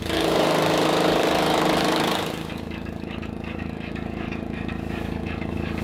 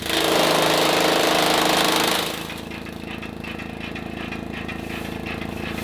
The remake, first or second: first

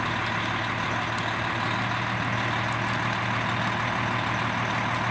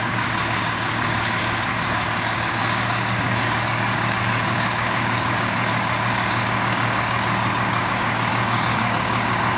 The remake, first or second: second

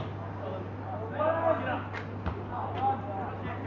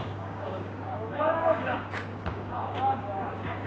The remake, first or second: second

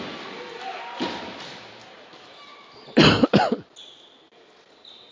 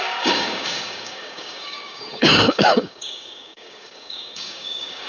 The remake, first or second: second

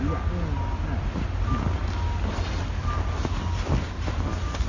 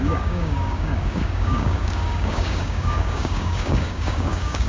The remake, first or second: second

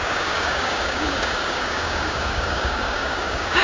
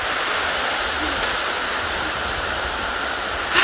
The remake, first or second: first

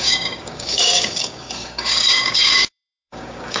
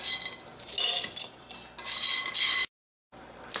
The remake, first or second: first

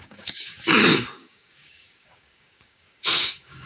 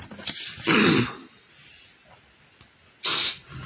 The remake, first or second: first